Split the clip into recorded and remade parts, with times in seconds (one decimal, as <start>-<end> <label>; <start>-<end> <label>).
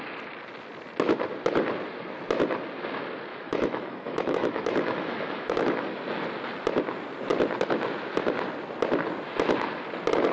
0.0-3.3 recorded; 3.3-5.8 remade; 5.8-10.3 recorded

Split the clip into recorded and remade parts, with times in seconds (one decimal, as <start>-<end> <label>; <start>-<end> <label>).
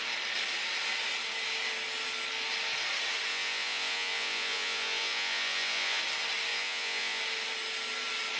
0.0-3.3 recorded; 3.3-6.0 remade; 6.0-6.5 recorded; 6.5-7.2 remade; 7.2-8.4 recorded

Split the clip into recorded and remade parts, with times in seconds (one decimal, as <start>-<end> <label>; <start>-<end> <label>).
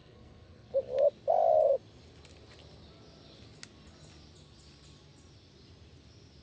0.0-0.8 remade; 0.8-6.4 recorded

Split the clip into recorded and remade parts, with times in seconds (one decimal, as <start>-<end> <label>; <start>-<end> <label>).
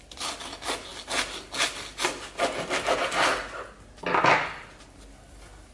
0.0-5.7 recorded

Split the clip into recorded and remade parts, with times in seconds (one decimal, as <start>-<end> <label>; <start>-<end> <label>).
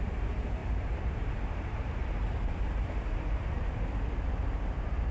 0.0-0.6 recorded; 0.6-3.7 remade; 3.7-5.1 recorded